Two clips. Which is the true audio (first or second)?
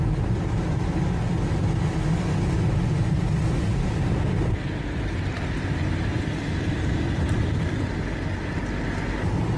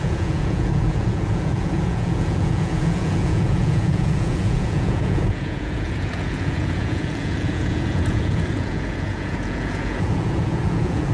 first